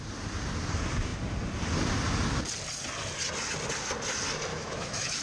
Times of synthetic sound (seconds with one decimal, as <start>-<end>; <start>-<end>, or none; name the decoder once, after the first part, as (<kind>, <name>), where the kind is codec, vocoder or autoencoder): 4.5-5.2 (autoencoder, DAC-VAE)

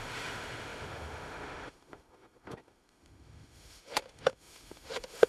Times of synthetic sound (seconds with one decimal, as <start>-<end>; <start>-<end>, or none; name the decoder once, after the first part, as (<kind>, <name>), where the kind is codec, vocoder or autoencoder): 0.0-5.3 (autoencoder, DAC-VAE)

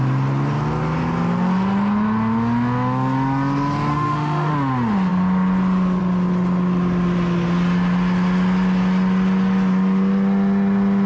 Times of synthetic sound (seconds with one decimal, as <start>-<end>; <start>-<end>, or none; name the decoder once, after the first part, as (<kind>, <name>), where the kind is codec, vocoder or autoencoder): 3.9-4.5 (autoencoder, DAC-VAE)

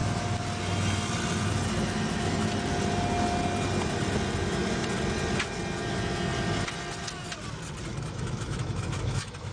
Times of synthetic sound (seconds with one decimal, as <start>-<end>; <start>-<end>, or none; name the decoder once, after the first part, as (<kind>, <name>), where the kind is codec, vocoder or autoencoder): 7.9-9.5 (autoencoder, DAC-VAE)

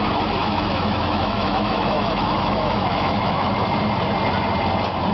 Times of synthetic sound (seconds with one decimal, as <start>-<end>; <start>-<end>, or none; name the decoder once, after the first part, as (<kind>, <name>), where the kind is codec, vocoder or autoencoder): 0.4-3.5 (autoencoder, DAC-VAE)